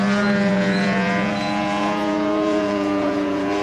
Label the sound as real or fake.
fake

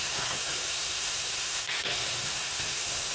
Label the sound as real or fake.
fake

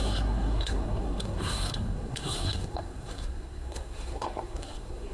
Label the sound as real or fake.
fake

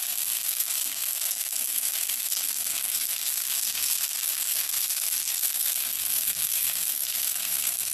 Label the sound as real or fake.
fake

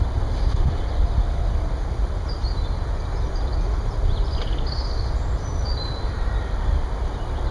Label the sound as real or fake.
real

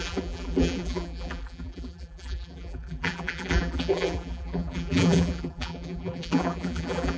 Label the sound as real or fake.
fake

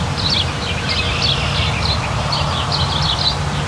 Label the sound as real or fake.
real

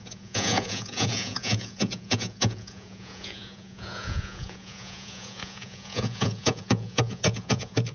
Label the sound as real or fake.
fake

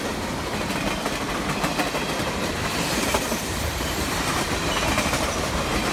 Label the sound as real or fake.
real